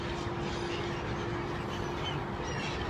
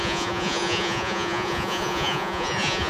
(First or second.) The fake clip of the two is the second